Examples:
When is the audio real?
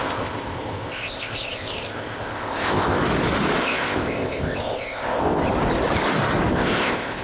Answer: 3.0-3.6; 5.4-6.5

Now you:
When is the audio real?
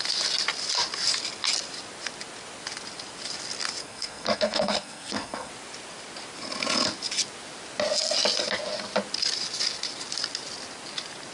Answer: 0.0-3.8; 5.5-11.3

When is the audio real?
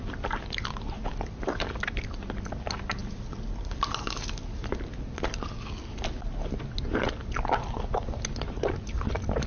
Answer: 0.0-9.5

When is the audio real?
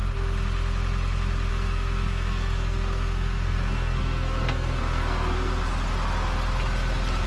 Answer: 0.0-1.5; 5.5-7.3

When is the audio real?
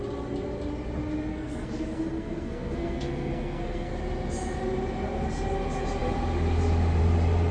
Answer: 0.0-1.3; 3.9-7.5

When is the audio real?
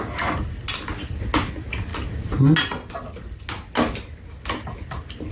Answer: 0.0-5.3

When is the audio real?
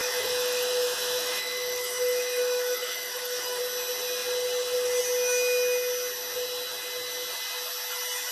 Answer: 3.6-8.3